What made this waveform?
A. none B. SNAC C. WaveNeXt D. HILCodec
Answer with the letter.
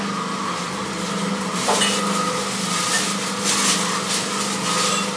A